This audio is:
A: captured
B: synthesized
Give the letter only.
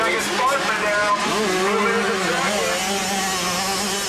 A